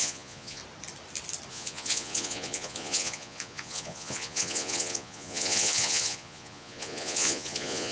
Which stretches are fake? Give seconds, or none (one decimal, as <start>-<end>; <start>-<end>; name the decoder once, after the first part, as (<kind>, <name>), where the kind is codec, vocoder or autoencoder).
0.0-0.6 (vocoder, Vocos); 1.5-7.9